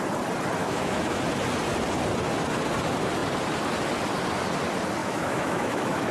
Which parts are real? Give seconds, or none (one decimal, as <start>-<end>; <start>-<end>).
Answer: 0.0-0.6; 1.2-5.0